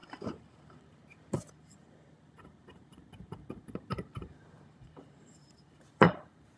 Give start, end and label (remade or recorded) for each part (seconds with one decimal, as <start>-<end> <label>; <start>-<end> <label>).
0.0-6.6 remade